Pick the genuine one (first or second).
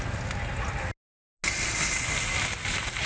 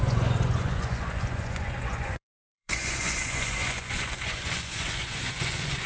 first